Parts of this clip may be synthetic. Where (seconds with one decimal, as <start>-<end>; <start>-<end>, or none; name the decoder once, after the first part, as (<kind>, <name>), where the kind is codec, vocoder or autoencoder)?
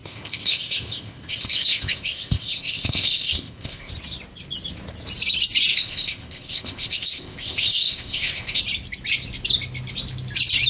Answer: 0.0-3.9 (codec, ZipCodec); 5.7-8.6